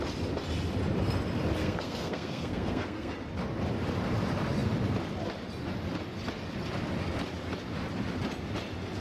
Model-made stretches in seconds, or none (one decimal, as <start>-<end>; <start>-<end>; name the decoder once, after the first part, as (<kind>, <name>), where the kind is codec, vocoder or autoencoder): 1.6-3.1 (codec, SNAC)